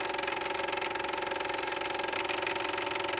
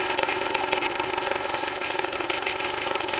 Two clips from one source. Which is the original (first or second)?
first